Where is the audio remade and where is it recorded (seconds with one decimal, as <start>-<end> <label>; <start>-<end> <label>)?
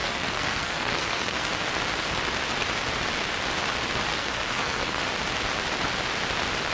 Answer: 0.0-1.5 remade; 1.5-4.1 recorded; 4.1-5.0 remade; 5.0-6.7 recorded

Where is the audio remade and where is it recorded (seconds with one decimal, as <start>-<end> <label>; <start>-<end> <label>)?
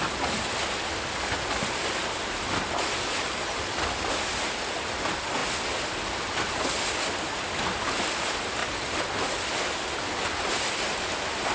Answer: 0.0-11.5 recorded